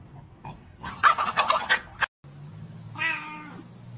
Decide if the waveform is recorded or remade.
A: recorded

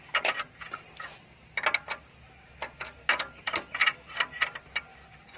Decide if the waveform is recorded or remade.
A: recorded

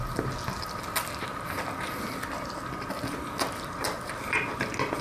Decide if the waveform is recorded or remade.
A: recorded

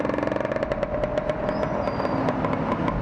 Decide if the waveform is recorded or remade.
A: recorded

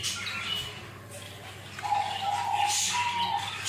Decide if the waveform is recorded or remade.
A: recorded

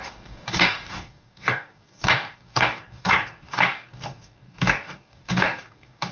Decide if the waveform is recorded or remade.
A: remade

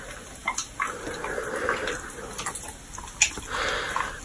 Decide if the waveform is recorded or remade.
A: recorded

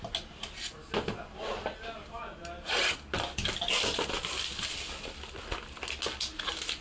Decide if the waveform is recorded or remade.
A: recorded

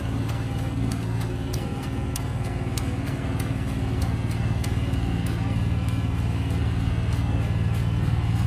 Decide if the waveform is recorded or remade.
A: remade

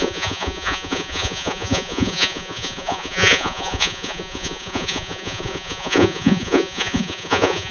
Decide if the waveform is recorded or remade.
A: remade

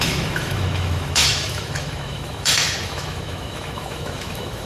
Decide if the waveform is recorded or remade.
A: remade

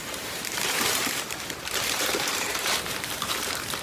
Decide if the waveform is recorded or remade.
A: remade